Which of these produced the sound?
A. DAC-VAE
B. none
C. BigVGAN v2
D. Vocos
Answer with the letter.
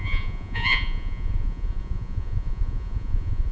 D